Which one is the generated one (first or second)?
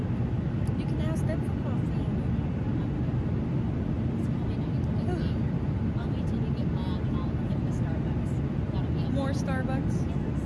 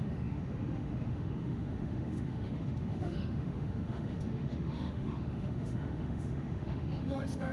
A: second